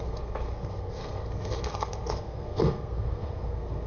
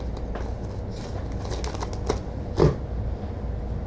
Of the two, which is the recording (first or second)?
second